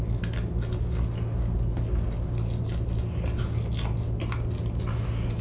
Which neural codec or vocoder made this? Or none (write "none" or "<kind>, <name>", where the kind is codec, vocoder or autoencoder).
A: none